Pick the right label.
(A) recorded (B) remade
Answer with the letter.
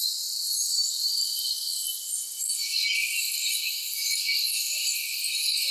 A